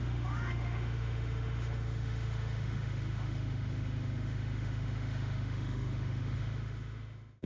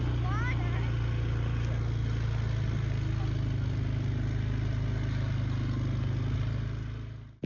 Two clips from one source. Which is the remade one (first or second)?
first